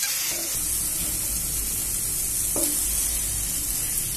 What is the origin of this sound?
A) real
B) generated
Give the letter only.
A